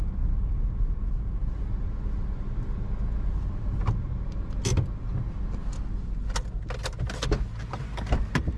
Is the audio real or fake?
real